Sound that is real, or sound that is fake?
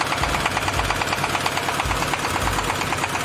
real